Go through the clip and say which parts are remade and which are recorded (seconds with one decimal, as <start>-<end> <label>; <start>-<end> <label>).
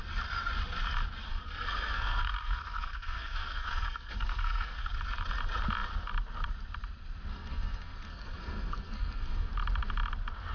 0.0-1.3 recorded; 1.3-4.9 remade; 4.9-7.3 recorded; 7.3-9.5 remade; 9.5-10.5 recorded